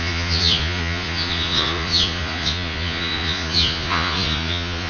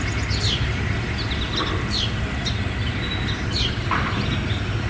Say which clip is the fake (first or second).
first